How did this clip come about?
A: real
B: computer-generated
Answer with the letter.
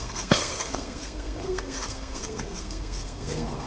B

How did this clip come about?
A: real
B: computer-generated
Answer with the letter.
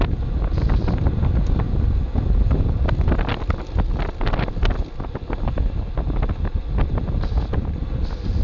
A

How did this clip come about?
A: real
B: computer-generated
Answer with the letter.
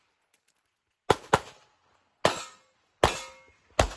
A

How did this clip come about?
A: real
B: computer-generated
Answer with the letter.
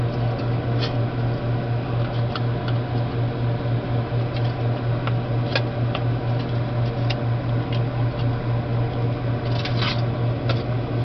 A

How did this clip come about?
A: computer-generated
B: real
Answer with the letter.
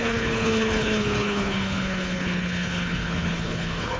A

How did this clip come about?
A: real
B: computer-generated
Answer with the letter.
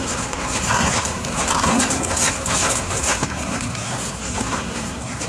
B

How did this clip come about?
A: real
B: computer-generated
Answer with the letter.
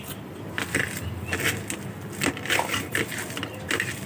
A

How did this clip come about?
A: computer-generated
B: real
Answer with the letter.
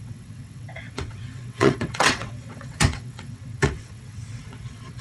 A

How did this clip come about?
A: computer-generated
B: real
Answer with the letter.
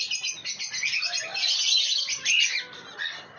B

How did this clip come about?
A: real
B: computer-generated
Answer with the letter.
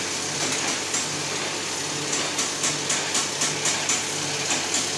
A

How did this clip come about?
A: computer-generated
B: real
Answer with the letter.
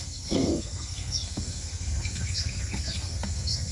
A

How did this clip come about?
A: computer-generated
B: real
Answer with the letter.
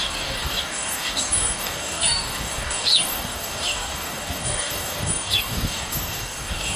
A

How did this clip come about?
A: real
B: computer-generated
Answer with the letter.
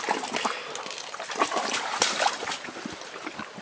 A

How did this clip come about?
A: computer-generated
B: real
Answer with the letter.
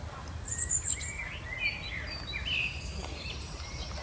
B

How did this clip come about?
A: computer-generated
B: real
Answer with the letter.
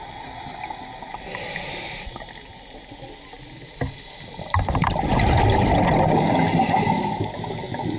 B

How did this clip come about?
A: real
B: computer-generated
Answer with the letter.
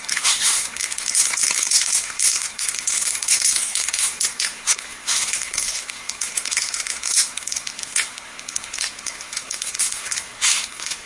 B